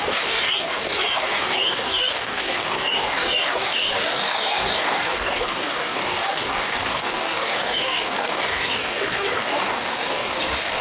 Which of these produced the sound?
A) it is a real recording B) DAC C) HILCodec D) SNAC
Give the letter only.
B